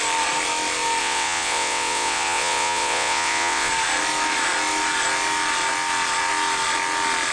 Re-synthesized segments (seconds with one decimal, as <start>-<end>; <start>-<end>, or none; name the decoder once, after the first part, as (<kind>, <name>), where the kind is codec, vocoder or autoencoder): 1.0-3.7 (vocoder, WaveNeXt)